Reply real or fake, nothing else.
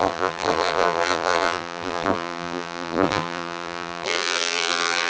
fake